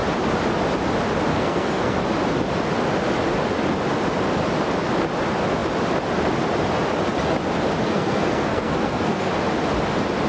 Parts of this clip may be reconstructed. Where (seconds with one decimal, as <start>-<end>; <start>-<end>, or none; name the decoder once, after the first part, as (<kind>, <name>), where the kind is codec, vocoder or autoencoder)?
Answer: 1.3-2.0 (codec, SNAC); 7.8-9.3